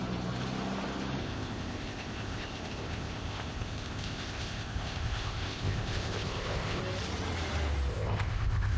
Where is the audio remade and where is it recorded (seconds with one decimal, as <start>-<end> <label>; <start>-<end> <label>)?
0.0-1.2 recorded; 1.2-6.8 remade; 6.8-7.9 recorded; 7.9-8.8 remade